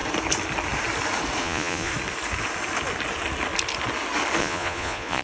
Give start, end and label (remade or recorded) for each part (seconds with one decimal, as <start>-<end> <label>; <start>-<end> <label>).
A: 0.0-1.4 recorded; 1.4-1.9 remade; 1.9-4.4 recorded; 4.4-5.2 remade